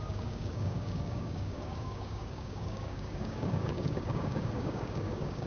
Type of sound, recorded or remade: remade